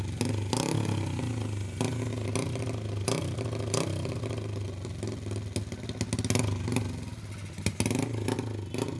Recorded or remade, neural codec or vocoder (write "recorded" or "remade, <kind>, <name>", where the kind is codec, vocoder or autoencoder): recorded